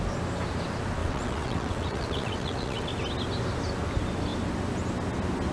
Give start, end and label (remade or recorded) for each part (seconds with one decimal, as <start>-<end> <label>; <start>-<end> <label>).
0.0-1.0 recorded; 1.0-2.9 remade; 2.9-5.5 recorded